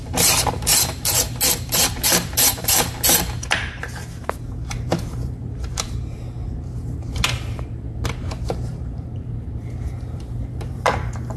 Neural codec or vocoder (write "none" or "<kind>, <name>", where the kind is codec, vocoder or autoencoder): vocoder, BigVGAN v2